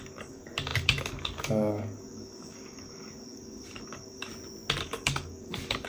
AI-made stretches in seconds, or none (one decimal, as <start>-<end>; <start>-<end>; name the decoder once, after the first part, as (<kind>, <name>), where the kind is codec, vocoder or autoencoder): 0.0-4.3 (codec, DAC); 4.8-5.9